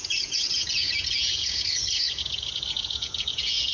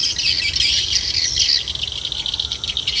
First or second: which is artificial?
first